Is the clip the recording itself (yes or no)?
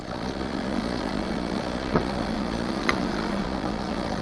no